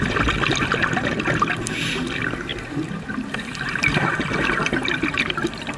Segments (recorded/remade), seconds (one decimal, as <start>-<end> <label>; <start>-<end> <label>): 0.0-5.8 recorded